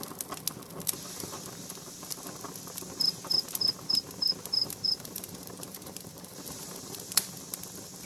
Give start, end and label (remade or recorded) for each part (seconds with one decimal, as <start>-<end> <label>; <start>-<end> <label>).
0.0-4.6 recorded; 4.6-7.3 remade; 7.3-8.0 recorded